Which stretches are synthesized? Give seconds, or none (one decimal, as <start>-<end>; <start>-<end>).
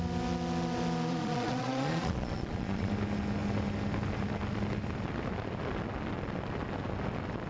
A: 1.1-2.9